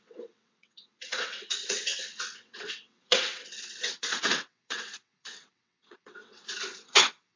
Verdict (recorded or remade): remade